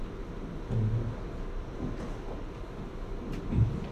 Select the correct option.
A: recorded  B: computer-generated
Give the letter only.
A